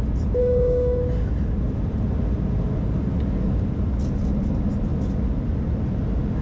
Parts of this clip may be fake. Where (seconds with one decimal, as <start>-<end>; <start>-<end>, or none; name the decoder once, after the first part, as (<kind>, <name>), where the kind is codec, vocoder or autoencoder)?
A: 0.4-1.0 (autoencoder, DAC-VAE)